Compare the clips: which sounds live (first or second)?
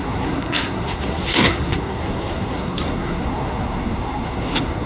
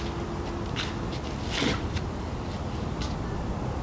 second